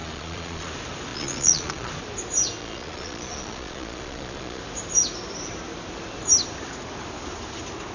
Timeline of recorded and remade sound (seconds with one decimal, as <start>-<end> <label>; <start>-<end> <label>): 0.0-0.7 remade; 0.7-1.1 recorded; 1.1-1.9 remade; 1.9-2.6 recorded; 2.6-4.6 remade; 4.6-7.9 recorded